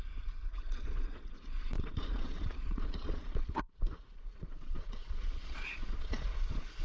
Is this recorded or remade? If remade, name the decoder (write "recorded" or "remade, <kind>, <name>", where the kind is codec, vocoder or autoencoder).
remade, vocoder, Vocos